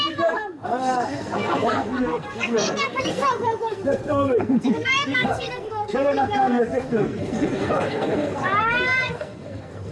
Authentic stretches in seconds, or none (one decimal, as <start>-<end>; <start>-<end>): none